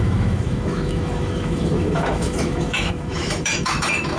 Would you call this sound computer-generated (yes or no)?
yes